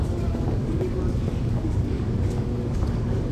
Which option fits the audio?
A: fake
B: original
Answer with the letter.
A